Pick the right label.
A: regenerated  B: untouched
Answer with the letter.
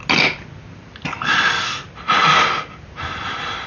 B